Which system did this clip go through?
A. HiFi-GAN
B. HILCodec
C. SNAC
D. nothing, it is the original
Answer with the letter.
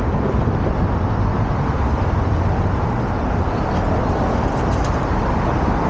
D